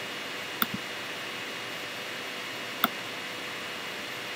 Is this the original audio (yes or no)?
yes